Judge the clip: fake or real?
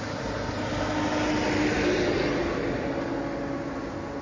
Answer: real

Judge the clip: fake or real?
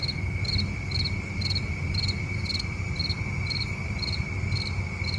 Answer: real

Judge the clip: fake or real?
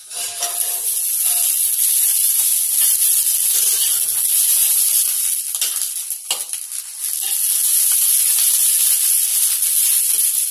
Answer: real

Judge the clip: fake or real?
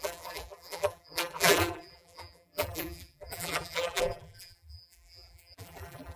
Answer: fake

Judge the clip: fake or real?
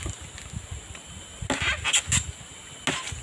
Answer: real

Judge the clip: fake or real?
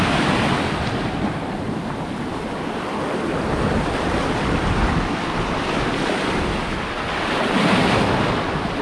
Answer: real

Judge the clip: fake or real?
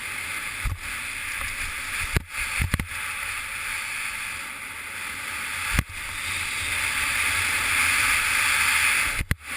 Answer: real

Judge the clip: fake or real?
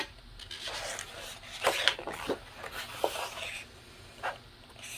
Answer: real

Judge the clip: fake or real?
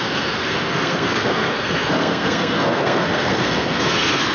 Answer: fake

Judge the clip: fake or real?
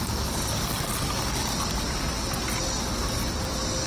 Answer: real